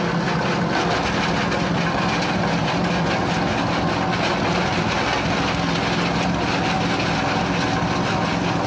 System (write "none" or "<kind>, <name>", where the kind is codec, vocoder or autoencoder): none